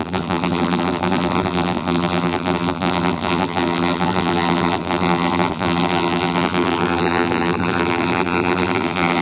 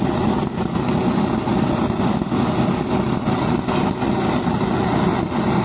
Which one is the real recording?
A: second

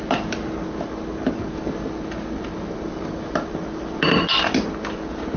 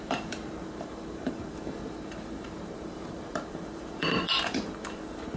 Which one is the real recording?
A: first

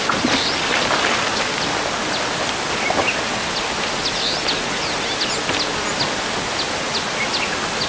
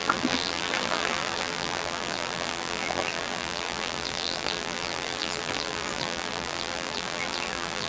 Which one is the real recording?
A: first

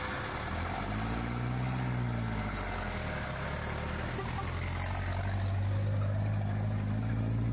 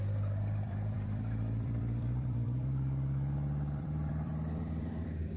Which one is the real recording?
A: first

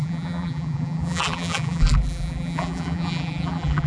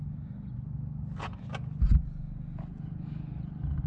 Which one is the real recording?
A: second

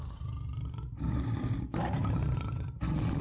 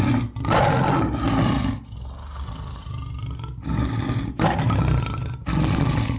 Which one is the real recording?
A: second